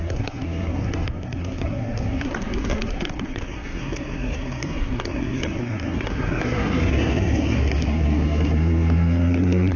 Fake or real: fake